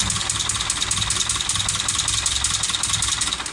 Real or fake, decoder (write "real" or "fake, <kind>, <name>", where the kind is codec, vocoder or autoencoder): real